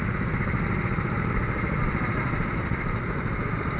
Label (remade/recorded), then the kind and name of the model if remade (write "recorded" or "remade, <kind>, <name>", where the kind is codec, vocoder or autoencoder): recorded